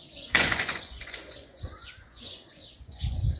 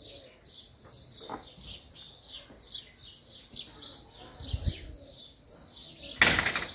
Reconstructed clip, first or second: first